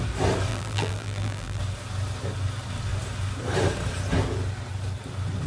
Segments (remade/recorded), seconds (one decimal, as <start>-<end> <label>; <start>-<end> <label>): 0.0-0.5 recorded; 0.5-1.6 remade; 1.6-5.5 recorded